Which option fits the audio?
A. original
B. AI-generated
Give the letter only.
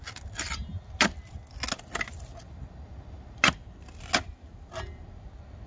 A